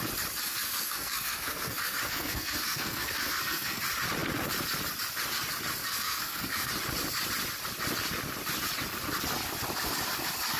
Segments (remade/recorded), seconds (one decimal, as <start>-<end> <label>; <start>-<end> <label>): 0.0-0.4 recorded; 0.4-3.8 remade; 3.8-5.8 recorded; 5.8-6.7 remade; 6.7-10.6 recorded